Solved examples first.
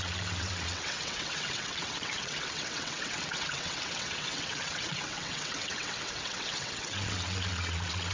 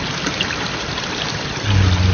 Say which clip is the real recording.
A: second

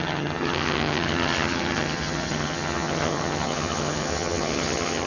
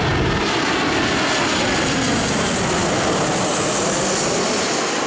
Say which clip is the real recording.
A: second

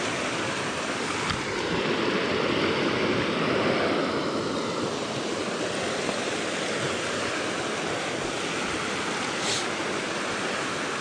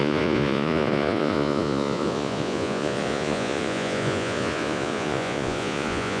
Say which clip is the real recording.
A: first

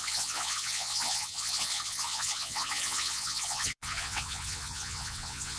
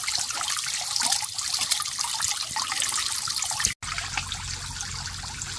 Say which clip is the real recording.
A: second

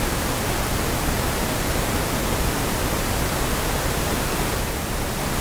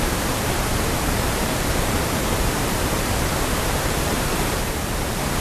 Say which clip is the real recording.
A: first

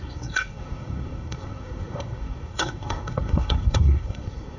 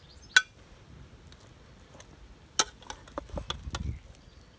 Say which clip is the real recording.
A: second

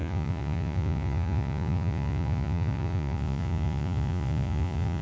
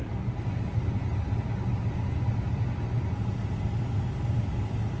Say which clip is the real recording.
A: second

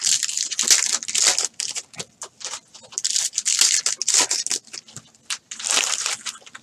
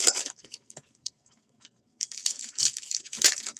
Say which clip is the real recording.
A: first